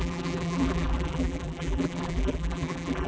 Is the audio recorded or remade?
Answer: remade